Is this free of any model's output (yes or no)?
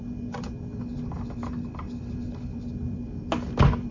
yes